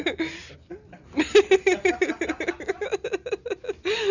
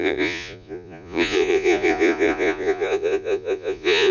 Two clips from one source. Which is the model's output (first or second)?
second